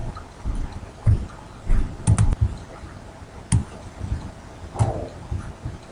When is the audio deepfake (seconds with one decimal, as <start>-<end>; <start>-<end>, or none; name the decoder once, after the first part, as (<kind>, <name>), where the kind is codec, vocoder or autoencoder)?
none